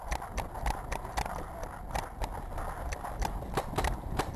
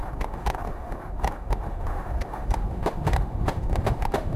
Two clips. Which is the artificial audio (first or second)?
second